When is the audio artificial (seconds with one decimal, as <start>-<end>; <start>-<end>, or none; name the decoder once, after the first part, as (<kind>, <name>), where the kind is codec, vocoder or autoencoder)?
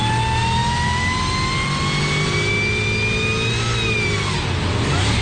none